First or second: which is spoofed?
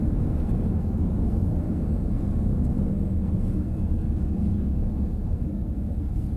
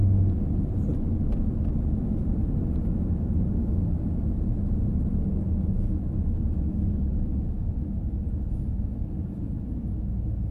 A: first